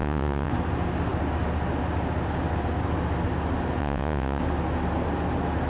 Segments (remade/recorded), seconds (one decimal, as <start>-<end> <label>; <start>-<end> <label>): 0.0-0.5 remade; 0.5-3.8 recorded; 3.8-4.4 remade; 4.4-5.7 recorded